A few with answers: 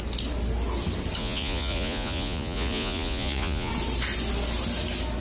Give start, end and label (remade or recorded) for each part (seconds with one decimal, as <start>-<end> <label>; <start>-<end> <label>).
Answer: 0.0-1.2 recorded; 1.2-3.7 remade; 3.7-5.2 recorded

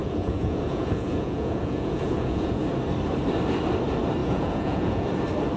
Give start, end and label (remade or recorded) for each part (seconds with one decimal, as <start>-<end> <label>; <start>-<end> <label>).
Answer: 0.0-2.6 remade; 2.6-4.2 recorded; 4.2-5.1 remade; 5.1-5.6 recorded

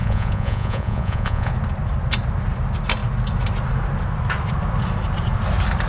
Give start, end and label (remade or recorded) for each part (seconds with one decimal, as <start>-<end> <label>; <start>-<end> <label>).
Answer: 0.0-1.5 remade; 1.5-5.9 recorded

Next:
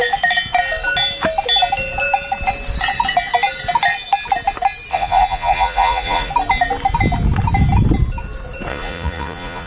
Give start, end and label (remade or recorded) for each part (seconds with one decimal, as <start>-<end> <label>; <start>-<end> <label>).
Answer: 0.0-4.9 recorded; 4.9-6.3 remade; 6.3-8.7 recorded; 8.7-9.7 remade